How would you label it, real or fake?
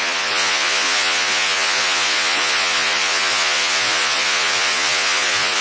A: fake